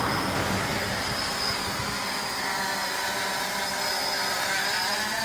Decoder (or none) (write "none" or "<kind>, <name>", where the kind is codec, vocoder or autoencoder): none